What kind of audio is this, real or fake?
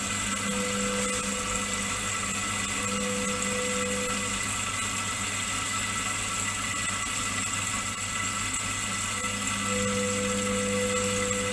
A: real